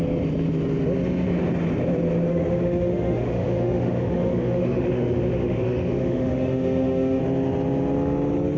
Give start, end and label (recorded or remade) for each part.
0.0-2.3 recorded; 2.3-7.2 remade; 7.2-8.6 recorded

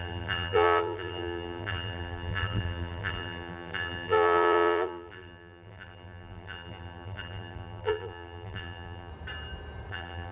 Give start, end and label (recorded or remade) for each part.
0.0-9.1 remade; 9.1-9.9 recorded; 9.9-10.3 remade

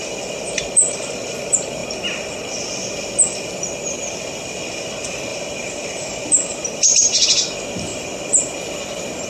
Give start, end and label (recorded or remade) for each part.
0.0-5.3 recorded; 5.3-6.1 remade; 6.1-9.3 recorded

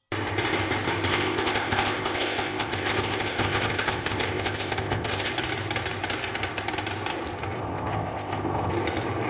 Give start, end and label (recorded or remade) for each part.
0.0-1.1 recorded; 1.1-5.3 remade; 5.3-7.6 recorded; 7.6-8.7 remade; 8.7-9.3 recorded

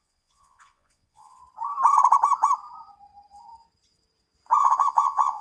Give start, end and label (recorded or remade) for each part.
0.0-1.4 remade; 1.4-4.6 recorded; 4.6-5.4 remade

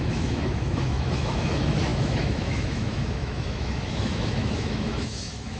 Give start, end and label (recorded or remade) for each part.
0.0-5.6 remade

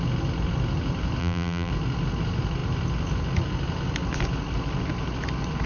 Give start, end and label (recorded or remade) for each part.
0.0-1.2 recorded; 1.2-1.7 remade; 1.7-5.7 recorded